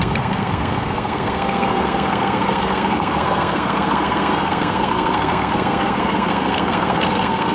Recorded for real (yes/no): no